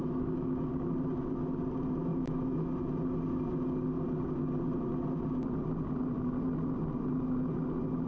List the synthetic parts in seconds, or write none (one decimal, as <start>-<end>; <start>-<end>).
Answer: 0.0-0.7; 2.1-2.7